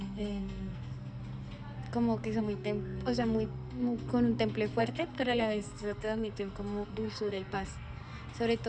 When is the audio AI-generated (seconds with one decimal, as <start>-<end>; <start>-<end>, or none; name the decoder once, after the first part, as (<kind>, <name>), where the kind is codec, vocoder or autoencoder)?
0.0-1.2 (codec, SNAC); 2.4-4.1; 4.8-8.0